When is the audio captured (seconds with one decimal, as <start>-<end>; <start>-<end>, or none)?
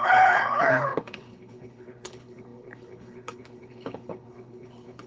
none